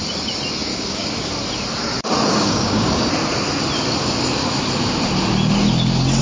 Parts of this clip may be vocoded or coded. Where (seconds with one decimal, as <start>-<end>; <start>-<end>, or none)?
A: 0.7-1.3; 2.3-3.1